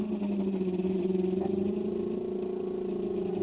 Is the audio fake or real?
real